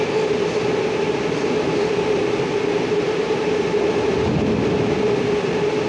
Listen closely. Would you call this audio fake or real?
real